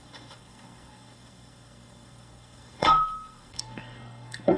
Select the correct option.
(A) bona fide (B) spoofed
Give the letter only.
B